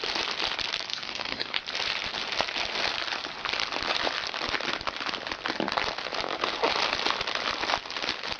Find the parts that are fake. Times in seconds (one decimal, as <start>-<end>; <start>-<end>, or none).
0.9-1.6